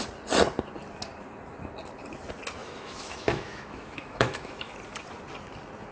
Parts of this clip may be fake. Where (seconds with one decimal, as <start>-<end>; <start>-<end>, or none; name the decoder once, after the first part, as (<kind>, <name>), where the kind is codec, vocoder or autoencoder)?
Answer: 2.6-4.7 (autoencoder, DAC-VAE)